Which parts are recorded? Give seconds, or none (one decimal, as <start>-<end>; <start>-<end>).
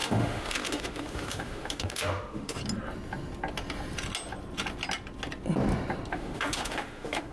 2.6-6.1